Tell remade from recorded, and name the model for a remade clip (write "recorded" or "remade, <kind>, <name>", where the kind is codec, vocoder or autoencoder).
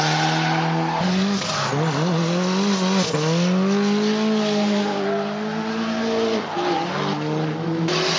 recorded